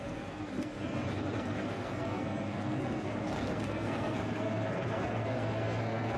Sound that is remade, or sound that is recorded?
remade